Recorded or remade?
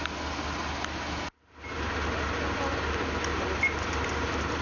recorded